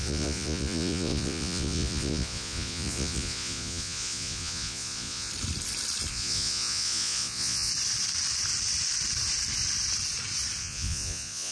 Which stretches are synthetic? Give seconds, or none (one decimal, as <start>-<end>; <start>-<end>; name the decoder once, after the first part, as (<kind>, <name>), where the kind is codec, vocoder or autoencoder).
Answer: 0.0-5.3 (vocoder, Vocos); 6.1-7.7; 10.6-11.5